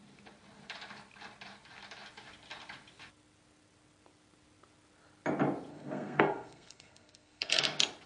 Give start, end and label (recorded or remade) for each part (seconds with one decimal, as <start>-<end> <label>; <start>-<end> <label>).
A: 0.0-5.7 recorded; 5.7-7.6 remade; 7.6-8.1 recorded